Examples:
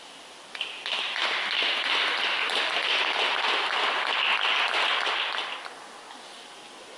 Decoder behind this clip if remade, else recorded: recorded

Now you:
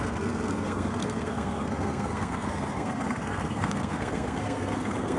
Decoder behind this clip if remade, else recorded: remade, codec, SNAC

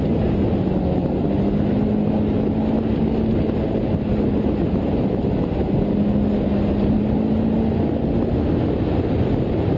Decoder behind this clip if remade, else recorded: recorded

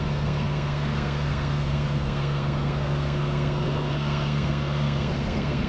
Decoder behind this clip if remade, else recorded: remade, codec, SNAC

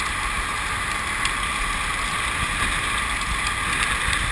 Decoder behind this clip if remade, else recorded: recorded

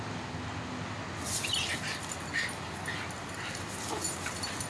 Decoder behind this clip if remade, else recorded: recorded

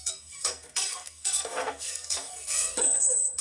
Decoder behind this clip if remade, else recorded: remade, codec, SNAC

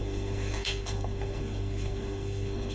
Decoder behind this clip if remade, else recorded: remade, codec, SNAC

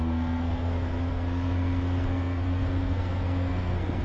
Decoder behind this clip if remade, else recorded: remade, codec, SNAC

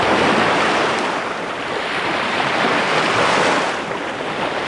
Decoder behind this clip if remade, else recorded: recorded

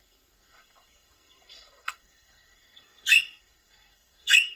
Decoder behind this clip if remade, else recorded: remade, codec, SNAC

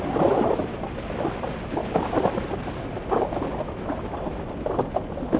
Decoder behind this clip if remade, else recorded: recorded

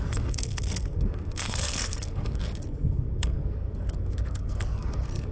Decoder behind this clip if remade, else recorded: remade, codec, SNAC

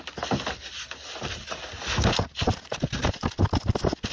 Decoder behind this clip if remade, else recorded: recorded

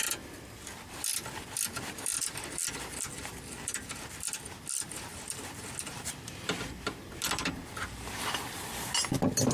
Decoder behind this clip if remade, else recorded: recorded